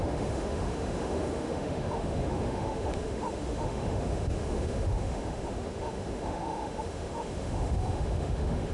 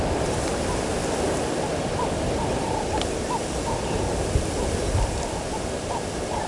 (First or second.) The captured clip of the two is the second